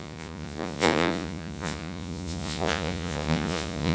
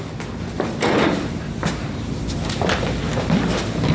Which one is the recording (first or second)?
second